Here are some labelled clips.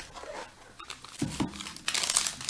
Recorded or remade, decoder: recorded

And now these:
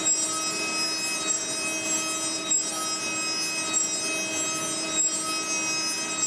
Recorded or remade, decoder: recorded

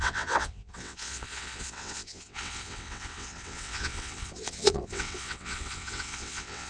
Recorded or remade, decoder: remade, vocoder, WaveNeXt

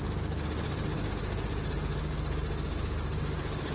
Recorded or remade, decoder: recorded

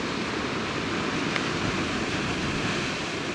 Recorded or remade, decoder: recorded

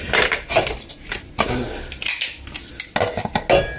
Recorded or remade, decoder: recorded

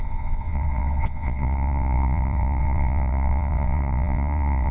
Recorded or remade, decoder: remade, vocoder, WaveNeXt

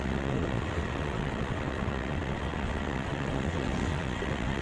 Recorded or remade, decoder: remade, vocoder, WaveNeXt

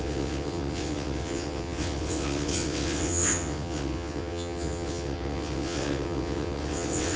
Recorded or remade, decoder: remade, vocoder, WaveNeXt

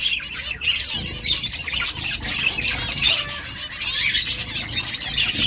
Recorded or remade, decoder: recorded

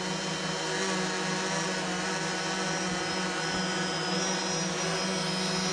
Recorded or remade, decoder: recorded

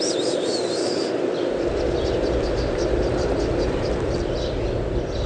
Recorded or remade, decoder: recorded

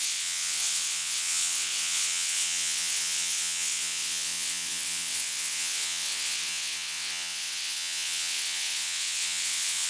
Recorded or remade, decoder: remade, vocoder, WaveNeXt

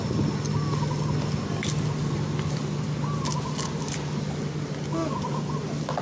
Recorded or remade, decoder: recorded